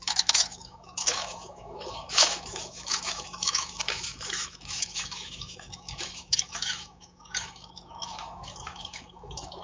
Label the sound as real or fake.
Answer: fake